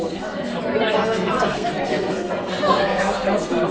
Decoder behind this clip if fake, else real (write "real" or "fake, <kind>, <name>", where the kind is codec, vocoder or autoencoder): fake, codec, SNAC